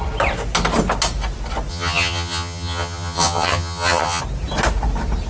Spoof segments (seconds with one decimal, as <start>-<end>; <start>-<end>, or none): 1.7-4.2